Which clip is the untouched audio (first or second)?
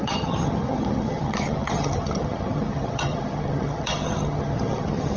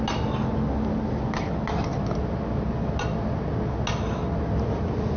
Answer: second